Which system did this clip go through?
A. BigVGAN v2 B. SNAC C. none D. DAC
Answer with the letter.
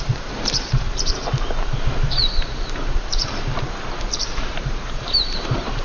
A